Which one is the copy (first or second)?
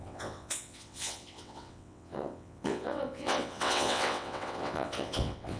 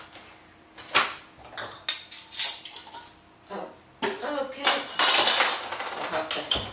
first